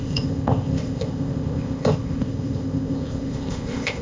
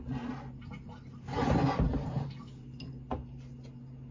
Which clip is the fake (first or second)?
first